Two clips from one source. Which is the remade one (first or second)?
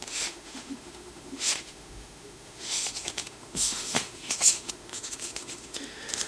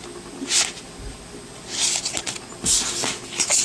first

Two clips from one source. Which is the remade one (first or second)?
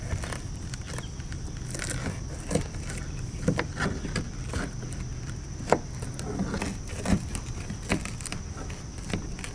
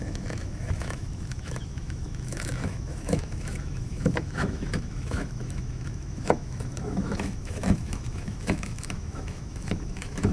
second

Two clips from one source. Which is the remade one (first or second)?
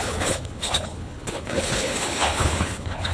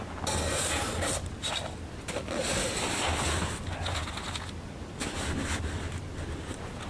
first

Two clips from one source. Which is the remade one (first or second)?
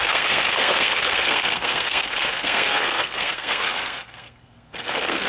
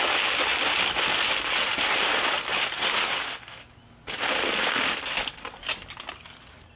first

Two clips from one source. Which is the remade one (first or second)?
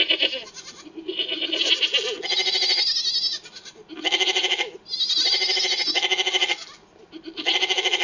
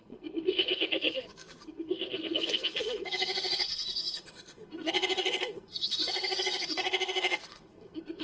second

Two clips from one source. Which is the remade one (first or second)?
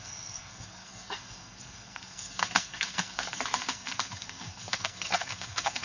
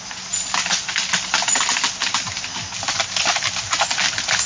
first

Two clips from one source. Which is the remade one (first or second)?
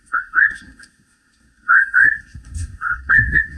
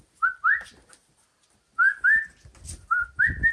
first